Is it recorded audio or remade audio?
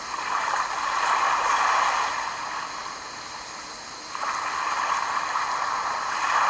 recorded